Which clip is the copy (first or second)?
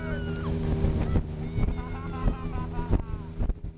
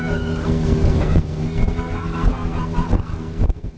second